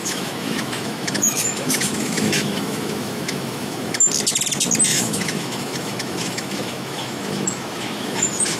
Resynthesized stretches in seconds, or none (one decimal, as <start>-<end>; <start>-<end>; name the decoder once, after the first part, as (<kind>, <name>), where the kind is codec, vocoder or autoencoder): 0.0-4.1 (autoencoder, DAC-VAE); 4.9-8.6